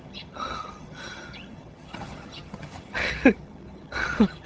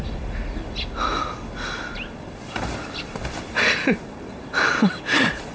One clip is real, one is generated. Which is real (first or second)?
second